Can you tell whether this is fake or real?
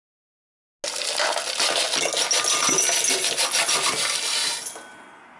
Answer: real